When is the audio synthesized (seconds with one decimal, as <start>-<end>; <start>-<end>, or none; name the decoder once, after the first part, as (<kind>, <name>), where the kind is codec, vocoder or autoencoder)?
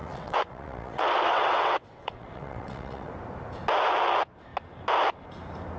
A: 0.0-3.1 (vocoder, WaveNeXt)